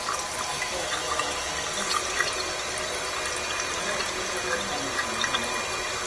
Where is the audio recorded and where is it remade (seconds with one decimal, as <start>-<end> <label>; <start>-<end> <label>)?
0.0-0.5 recorded; 0.5-1.5 remade; 1.5-6.1 recorded